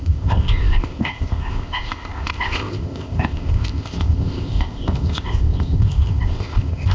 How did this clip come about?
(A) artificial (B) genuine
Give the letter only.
A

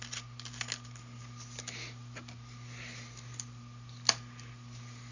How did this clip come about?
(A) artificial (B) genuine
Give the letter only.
B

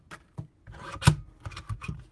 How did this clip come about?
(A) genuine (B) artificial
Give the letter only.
A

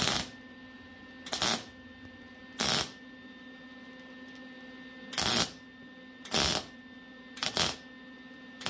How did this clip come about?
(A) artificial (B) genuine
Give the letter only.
B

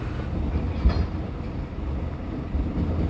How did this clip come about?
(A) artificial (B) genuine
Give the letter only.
B